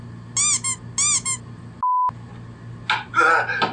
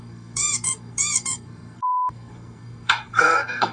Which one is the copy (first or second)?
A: second